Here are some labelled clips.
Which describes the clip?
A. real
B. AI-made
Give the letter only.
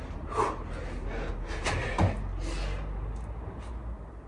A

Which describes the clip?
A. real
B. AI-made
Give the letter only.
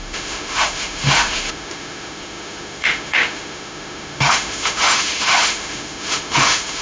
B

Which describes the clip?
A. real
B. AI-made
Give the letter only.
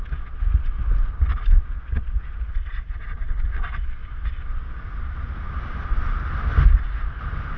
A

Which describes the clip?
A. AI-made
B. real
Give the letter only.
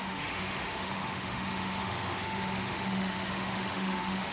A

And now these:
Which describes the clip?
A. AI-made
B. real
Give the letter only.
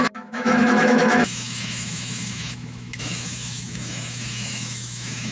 A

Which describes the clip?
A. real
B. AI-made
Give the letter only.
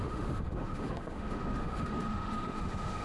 B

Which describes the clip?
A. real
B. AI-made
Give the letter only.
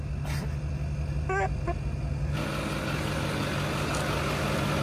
A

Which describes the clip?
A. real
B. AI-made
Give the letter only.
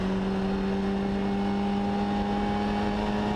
A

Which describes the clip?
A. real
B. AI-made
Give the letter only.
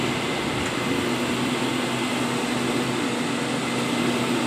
A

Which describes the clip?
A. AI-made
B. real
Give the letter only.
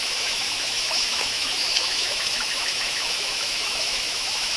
A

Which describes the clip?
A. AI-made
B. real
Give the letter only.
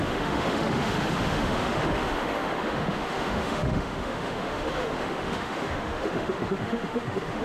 A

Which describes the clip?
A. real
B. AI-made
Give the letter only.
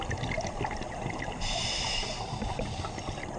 A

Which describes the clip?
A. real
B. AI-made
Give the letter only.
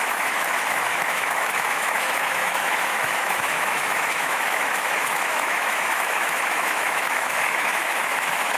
B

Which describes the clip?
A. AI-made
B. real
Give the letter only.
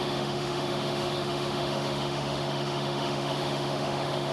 A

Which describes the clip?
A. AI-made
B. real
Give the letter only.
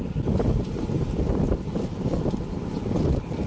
B